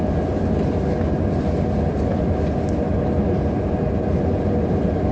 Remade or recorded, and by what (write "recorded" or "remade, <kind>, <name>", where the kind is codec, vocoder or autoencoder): recorded